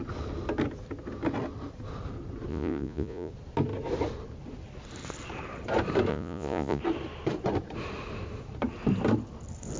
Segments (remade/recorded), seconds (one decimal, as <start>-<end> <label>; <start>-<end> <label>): 0.0-2.5 recorded; 2.5-3.3 remade; 3.3-6.1 recorded; 6.1-6.8 remade; 6.8-9.8 recorded